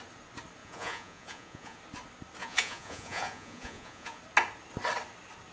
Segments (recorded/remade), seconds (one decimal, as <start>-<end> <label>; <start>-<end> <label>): 0.0-0.6 recorded; 0.6-1.8 remade; 1.8-2.4 recorded; 2.4-4.2 remade; 4.2-5.5 recorded